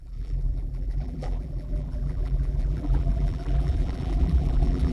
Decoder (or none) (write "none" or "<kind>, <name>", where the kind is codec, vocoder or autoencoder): vocoder, BigVGAN v2